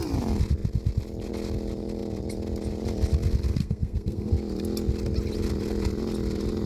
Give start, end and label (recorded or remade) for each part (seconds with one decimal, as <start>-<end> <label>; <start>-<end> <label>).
0.0-3.6 recorded; 3.6-4.3 remade; 4.3-6.7 recorded